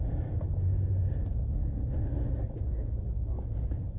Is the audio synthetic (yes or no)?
no